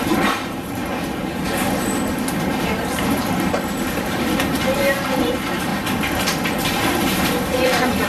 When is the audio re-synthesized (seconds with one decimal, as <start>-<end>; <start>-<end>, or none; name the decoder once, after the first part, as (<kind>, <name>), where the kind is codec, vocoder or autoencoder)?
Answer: 0.0-0.8 (vocoder, BigVGAN v2); 2.4-5.7; 6.6-8.1